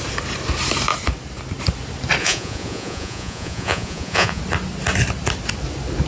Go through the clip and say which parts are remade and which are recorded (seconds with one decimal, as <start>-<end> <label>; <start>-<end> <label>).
0.0-2.2 recorded; 2.2-4.4 remade; 4.4-6.1 recorded

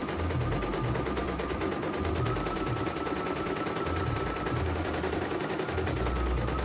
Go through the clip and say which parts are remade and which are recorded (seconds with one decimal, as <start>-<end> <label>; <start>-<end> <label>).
0.0-1.2 recorded; 1.2-5.2 remade; 5.2-6.6 recorded

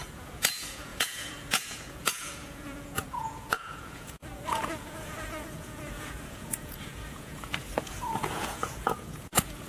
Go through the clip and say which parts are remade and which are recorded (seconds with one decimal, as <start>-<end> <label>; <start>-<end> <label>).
0.0-9.7 remade